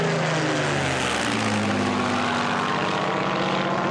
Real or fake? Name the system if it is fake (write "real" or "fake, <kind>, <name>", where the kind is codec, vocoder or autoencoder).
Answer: real